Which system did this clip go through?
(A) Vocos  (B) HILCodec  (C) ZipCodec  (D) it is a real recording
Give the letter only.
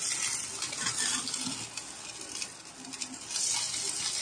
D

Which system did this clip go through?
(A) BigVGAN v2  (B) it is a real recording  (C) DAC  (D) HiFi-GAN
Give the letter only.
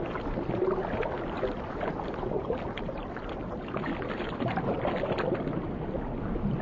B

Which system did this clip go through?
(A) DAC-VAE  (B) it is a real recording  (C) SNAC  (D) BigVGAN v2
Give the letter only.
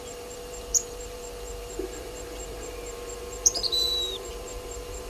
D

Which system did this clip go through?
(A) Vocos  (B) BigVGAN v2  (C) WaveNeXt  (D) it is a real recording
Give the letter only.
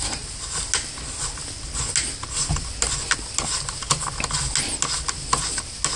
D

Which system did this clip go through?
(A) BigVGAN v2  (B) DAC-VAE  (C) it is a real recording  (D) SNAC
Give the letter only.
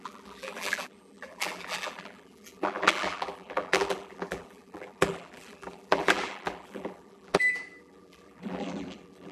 A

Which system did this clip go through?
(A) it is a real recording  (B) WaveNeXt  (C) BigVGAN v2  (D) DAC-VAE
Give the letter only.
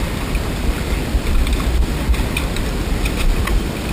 A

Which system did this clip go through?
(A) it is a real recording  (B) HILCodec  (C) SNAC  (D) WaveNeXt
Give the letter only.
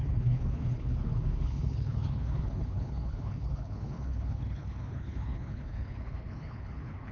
B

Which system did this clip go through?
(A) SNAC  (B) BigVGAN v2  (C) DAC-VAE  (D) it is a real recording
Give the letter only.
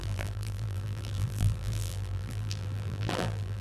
B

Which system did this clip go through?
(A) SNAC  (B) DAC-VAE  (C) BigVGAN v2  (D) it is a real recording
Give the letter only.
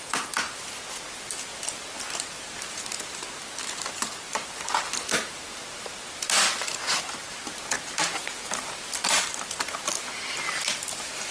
D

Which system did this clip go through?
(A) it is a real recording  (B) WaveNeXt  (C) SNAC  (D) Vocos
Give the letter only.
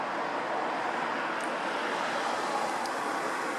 A